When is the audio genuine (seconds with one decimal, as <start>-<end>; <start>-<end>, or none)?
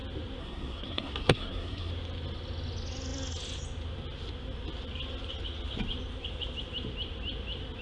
0.0-0.4; 1.9-7.8